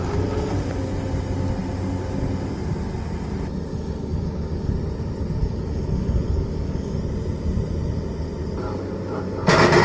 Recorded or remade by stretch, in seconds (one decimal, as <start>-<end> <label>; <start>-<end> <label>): 0.0-3.7 recorded; 3.7-4.7 remade; 4.7-5.4 recorded; 5.4-7.0 remade; 7.0-9.8 recorded